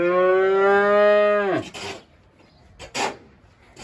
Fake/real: real